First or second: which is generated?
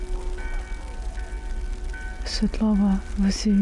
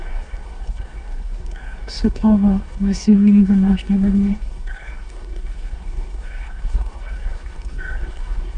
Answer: second